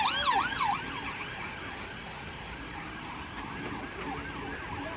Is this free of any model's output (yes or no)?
yes